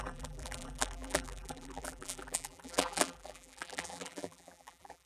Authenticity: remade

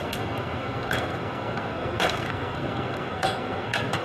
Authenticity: remade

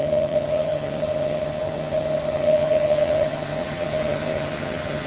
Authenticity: remade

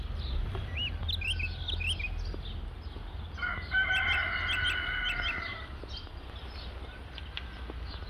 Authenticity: recorded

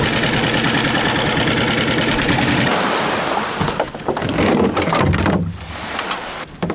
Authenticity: recorded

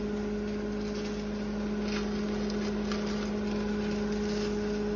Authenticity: recorded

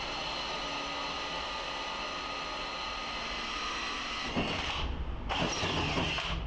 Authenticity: recorded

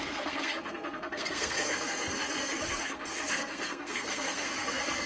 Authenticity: remade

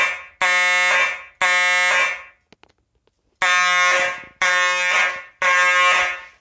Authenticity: recorded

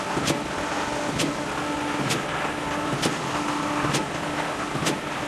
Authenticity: recorded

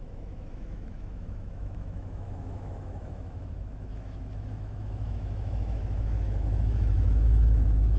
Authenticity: remade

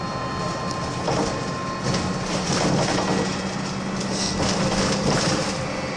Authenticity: recorded